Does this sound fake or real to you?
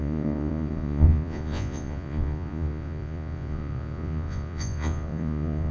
fake